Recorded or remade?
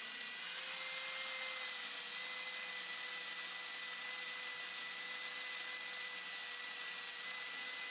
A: recorded